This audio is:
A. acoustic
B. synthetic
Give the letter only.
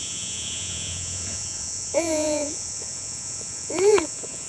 B